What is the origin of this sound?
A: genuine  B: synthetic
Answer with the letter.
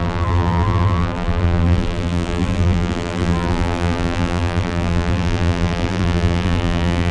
B